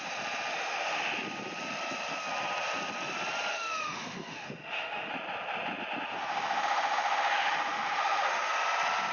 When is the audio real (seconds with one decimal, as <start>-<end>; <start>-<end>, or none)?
0.0-0.5; 1.1-3.5; 5.1-6.3; 8.5-9.1